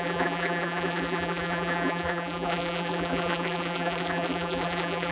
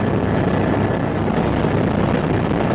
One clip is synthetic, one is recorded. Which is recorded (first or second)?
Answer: second